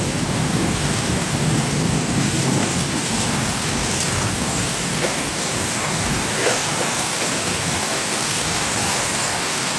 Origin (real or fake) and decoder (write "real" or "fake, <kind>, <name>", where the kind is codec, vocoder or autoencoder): fake, codec, DAC